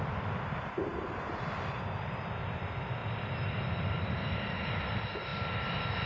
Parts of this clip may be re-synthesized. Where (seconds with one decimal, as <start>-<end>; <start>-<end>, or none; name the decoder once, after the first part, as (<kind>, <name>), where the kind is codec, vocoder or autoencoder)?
none